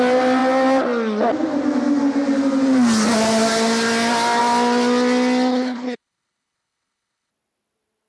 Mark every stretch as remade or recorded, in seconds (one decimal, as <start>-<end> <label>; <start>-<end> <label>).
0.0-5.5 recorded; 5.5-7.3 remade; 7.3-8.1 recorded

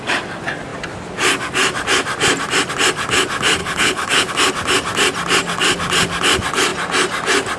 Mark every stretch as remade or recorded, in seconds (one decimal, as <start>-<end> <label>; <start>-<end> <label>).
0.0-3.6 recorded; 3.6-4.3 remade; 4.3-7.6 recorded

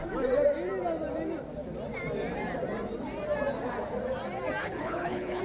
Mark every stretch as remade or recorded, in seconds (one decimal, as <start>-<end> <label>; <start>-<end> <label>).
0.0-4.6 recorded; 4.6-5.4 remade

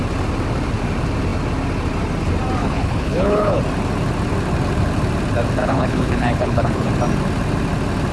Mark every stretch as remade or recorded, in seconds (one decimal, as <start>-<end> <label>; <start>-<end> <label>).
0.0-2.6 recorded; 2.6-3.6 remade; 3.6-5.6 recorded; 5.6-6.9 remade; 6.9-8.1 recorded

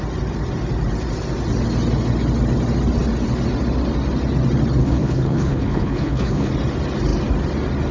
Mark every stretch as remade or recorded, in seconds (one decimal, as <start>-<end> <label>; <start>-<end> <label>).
0.0-4.8 recorded; 4.8-6.5 remade; 6.5-7.9 recorded